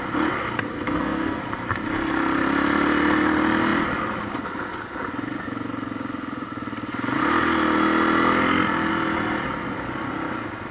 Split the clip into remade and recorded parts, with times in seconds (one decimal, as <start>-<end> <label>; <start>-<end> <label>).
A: 0.0-0.7 recorded; 0.7-1.4 remade; 1.4-10.7 recorded